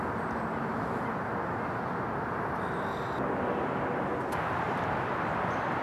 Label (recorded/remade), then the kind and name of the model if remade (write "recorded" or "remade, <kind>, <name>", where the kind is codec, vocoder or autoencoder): recorded